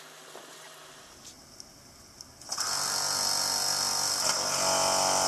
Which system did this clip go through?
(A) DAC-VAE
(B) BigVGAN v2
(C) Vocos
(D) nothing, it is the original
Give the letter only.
D